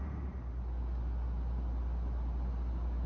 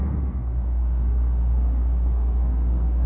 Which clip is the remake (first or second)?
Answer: second